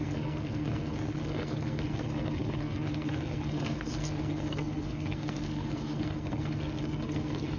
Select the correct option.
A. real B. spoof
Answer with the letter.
B